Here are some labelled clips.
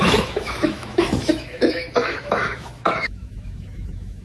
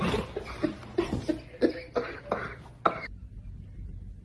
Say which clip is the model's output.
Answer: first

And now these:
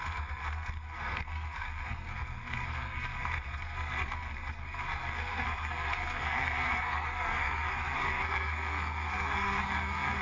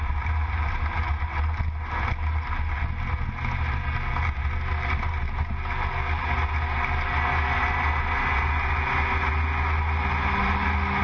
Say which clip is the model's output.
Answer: first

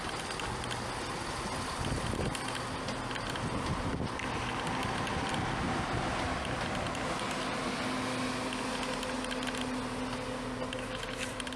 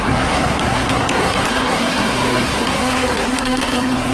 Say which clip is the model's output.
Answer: second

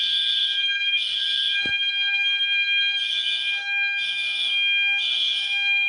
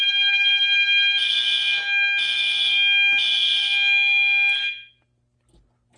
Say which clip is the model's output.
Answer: first